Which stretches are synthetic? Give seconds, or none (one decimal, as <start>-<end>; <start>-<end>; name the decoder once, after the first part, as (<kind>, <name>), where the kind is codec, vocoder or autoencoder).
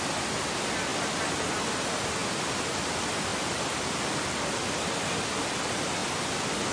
3.3-5.2 (vocoder, BigVGAN v2); 6.0-6.7